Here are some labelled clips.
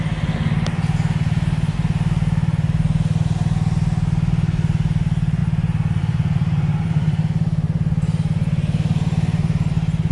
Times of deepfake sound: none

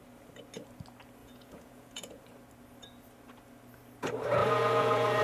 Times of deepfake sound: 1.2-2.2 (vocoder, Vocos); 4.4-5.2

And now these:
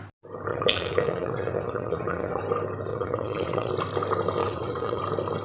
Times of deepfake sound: 0.5-2.4 (vocoder, WaveNeXt); 2.9-3.7; 4.4-5.0

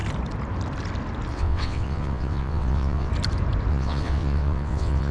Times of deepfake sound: 1.3-3.1 (vocoder, WaveNeXt); 3.7-5.1